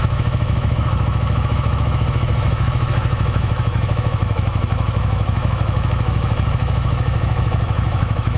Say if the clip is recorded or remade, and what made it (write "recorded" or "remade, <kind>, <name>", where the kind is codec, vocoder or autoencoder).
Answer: remade, autoencoder, DAC-VAE